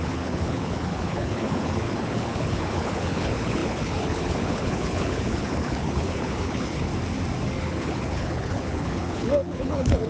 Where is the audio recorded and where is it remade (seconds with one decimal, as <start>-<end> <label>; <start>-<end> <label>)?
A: 0.0-6.9 remade; 6.9-7.6 recorded; 7.6-10.1 remade